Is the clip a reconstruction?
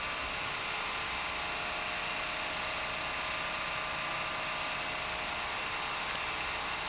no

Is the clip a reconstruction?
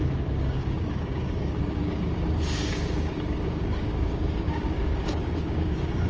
yes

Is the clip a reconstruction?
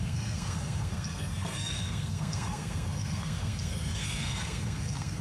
yes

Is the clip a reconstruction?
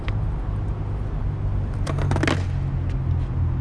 no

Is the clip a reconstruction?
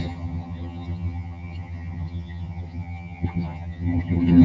yes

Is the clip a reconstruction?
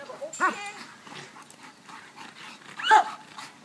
no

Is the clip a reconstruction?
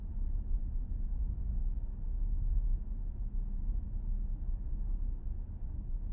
no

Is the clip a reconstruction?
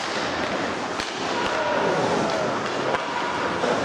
no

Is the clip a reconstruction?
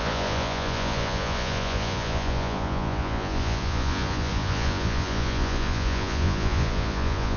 yes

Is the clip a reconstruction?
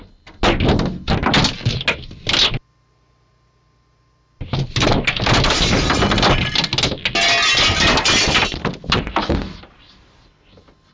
no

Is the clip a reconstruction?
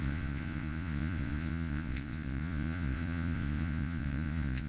yes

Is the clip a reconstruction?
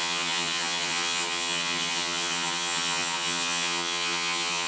yes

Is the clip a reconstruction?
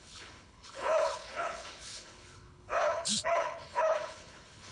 yes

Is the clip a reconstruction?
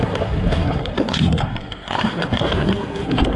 yes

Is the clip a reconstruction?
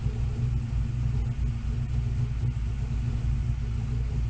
no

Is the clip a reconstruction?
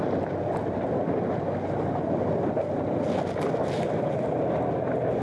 no